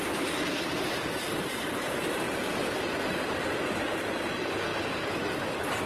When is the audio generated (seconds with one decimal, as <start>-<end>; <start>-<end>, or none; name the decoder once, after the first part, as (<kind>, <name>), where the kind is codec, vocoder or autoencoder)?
0.7-4.2 (vocoder, BigVGAN v2)